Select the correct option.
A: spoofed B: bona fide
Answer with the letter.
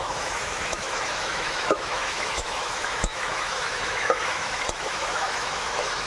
A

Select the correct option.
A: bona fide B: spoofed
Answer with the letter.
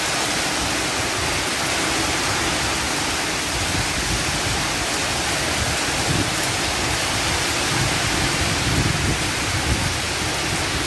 A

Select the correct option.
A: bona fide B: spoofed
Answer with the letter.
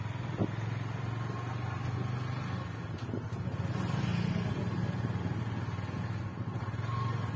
A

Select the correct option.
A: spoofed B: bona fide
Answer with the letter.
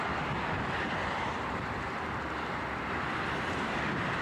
B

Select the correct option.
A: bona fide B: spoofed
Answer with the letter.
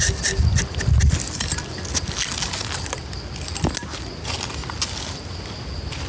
A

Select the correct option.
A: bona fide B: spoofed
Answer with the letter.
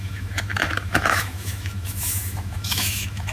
B